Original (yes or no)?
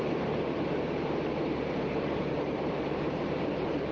no